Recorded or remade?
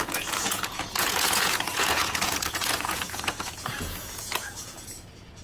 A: remade